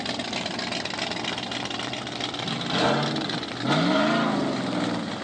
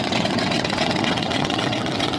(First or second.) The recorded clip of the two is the first